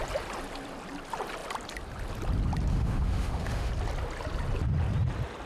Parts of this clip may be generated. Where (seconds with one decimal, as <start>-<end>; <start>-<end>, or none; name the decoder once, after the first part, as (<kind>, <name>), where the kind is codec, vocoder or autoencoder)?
2.7-3.7 (autoencoder, DAC-VAE)